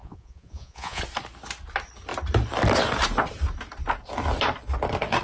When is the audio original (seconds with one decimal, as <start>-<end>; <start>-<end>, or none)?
1.0-5.2